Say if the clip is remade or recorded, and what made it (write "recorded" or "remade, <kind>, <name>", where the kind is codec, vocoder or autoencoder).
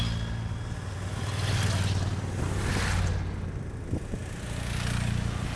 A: recorded